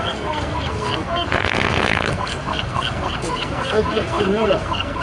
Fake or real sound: fake